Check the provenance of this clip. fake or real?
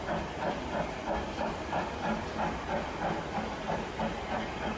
real